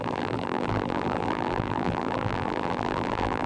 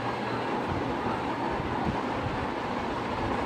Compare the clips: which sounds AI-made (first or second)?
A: first